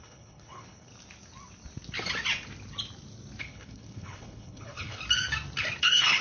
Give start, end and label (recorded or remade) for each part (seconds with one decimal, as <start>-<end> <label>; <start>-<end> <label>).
0.0-0.9 remade; 0.9-3.4 recorded; 3.4-5.0 remade; 5.0-5.8 recorded; 5.8-6.2 remade